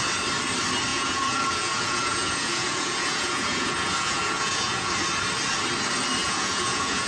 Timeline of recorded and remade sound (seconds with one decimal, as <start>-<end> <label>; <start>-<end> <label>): 0.0-0.9 recorded; 0.9-4.9 remade; 4.9-6.2 recorded; 6.2-7.1 remade